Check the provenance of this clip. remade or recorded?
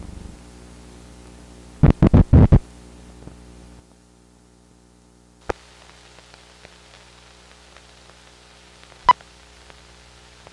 recorded